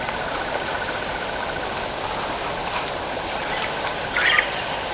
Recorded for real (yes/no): yes